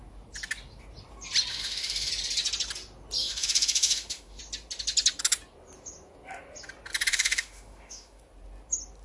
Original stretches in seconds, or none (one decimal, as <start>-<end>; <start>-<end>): 0.0-1.5; 2.1-3.2; 4.4-7.1; 8.2-9.0